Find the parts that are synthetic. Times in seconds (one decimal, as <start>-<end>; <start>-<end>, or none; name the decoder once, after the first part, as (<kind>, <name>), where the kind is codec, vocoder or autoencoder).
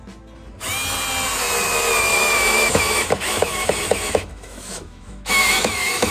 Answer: 2.1-6.1 (autoencoder, DAC-VAE)